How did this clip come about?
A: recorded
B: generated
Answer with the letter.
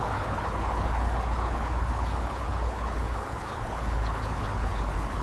B